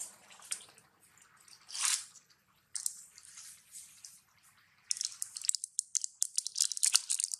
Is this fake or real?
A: fake